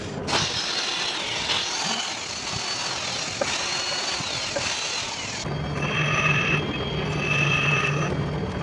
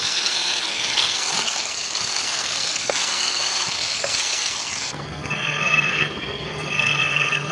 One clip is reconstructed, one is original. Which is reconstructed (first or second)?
second